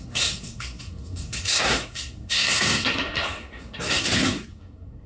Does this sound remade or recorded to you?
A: remade